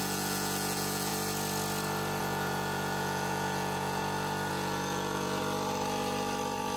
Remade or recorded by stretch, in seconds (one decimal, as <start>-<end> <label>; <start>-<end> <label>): 0.0-1.1 remade; 1.1-2.2 recorded; 2.2-4.0 remade; 4.0-4.5 recorded; 4.5-5.4 remade; 5.4-6.8 recorded